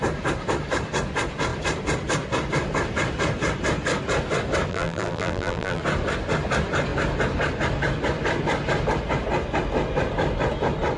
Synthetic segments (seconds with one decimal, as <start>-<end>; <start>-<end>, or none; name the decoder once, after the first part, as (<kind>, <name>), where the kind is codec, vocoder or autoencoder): 4.7-5.8 (vocoder, BigVGAN v2)